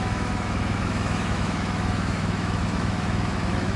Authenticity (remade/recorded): remade